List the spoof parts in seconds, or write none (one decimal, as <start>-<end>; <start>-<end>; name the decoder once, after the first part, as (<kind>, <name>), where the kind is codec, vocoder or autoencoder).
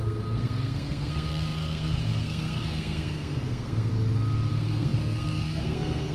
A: 0.0-3.9 (codec, SNAC); 4.5-6.1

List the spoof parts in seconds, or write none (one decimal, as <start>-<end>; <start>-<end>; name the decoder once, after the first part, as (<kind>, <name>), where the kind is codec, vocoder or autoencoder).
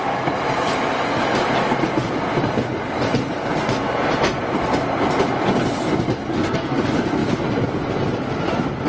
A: 6.3-6.8 (codec, SNAC)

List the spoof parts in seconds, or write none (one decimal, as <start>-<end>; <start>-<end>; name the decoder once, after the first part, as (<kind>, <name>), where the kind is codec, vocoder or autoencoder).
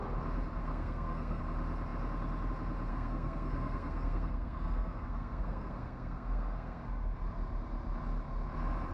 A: 0.6-1.4 (codec, SNAC); 2.9-6.8